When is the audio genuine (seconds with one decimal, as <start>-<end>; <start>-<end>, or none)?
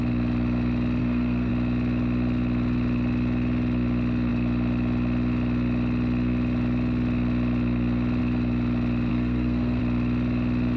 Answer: 0.0-1.0; 1.5-9.1; 9.8-10.8